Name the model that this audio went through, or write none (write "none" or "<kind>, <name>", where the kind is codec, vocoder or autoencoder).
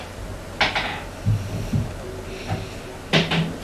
none